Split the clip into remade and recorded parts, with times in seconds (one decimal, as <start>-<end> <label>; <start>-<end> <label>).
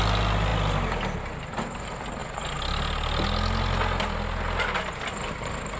0.0-5.8 recorded